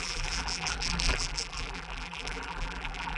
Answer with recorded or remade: remade